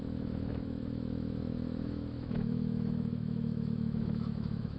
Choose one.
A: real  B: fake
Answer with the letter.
B